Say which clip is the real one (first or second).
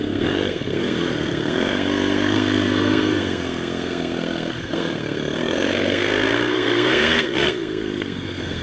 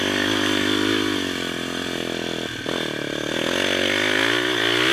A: second